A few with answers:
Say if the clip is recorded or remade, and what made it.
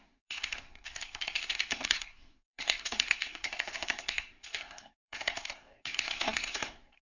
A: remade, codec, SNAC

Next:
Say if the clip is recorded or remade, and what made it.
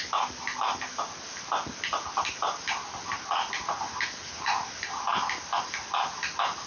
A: recorded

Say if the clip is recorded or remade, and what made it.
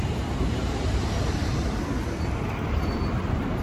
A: remade, vocoder, BigVGAN v2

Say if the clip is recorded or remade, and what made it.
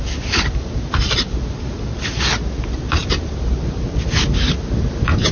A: recorded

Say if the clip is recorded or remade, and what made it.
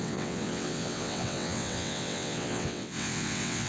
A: remade, vocoder, WaveNeXt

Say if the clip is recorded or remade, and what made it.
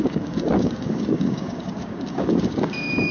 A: remade, codec, DAC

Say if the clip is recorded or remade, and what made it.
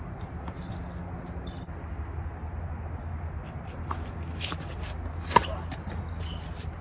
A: recorded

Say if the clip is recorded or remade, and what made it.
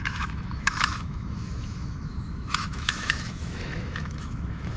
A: remade, autoencoder, DAC-VAE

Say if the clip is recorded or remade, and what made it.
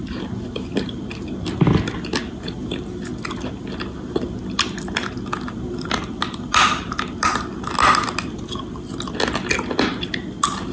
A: recorded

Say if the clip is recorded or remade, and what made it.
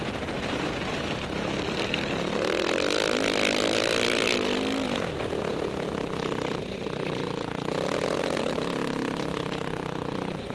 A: recorded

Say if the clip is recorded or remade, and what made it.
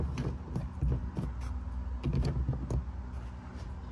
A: recorded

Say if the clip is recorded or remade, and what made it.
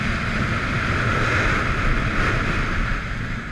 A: recorded